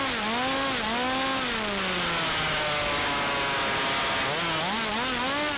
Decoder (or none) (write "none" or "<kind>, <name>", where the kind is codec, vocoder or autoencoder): none